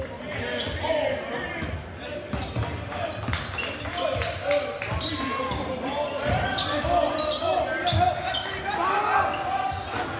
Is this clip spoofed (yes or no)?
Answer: no